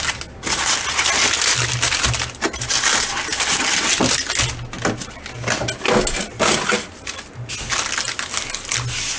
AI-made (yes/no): no